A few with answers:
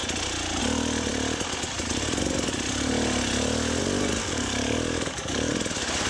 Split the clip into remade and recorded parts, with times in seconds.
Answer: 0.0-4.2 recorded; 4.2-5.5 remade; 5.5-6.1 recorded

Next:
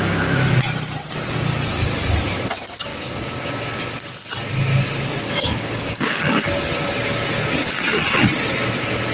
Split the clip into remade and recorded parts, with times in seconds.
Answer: 0.0-2.9 recorded; 2.9-3.8 remade; 3.8-4.7 recorded; 4.7-6.3 remade; 6.3-9.1 recorded

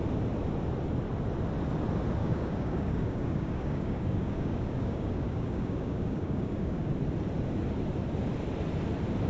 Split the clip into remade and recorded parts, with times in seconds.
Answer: 0.0-2.2 recorded; 2.2-6.9 remade; 6.9-9.3 recorded

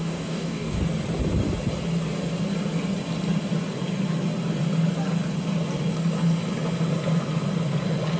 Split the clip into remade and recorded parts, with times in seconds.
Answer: 0.0-0.8 remade; 0.8-8.2 recorded